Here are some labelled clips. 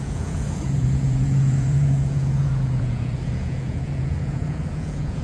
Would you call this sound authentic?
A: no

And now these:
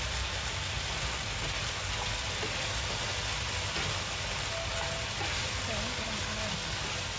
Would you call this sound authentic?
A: yes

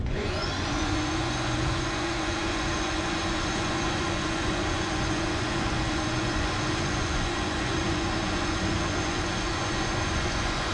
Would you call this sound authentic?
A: no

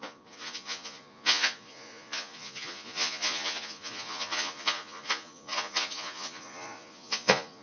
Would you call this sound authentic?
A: no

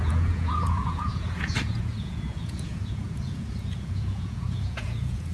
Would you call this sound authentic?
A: no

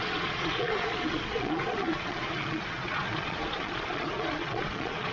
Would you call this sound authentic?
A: no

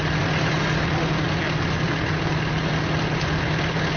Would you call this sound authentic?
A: yes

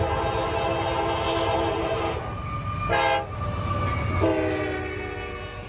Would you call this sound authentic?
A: yes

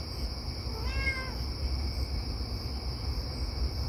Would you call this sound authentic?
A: yes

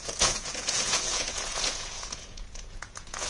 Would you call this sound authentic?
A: no